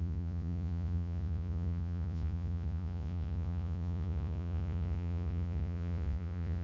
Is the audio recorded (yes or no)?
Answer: no